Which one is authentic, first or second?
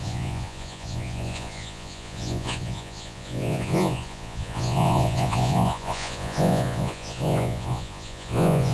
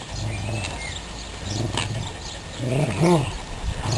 second